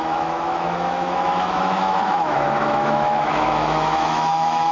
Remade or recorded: remade